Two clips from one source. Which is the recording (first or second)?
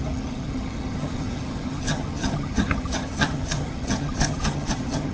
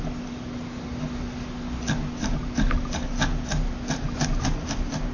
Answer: second